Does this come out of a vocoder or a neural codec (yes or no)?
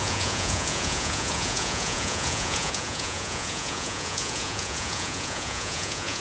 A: yes